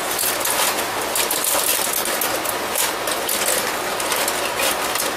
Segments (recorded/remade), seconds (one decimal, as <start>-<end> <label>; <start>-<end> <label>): 0.0-5.2 recorded